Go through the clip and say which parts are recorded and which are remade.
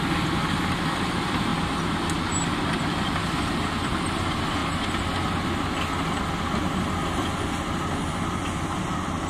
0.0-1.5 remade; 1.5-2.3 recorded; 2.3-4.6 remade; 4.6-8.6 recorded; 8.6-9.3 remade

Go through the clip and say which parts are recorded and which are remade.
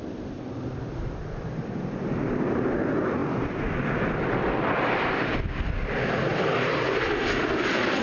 0.0-5.3 remade; 5.3-6.3 recorded; 6.3-8.0 remade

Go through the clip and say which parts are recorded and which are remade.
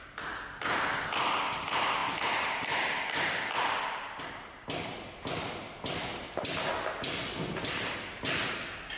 0.0-2.0 recorded; 2.0-6.7 remade; 6.7-9.0 recorded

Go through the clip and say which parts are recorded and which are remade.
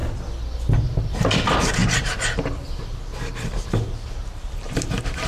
0.0-1.1 recorded; 1.1-1.8 remade; 1.8-4.1 recorded; 4.1-5.3 remade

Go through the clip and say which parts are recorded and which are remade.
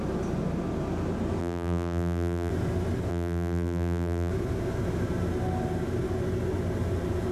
0.0-1.4 recorded; 1.4-2.5 remade; 2.5-3.1 recorded; 3.1-4.3 remade; 4.3-7.3 recorded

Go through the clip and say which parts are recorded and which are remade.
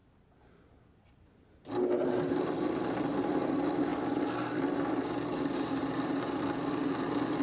0.0-2.5 remade; 2.5-7.4 recorded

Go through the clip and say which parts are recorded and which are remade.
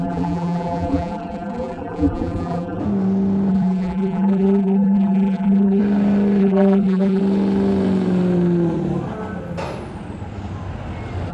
0.0-2.8 remade; 2.8-3.5 recorded; 3.5-5.8 remade; 5.8-6.4 recorded; 6.4-7.2 remade; 7.2-11.3 recorded